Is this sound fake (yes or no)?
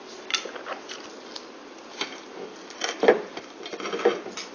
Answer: no